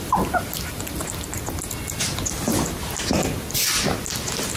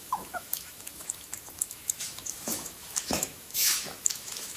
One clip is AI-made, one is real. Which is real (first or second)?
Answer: first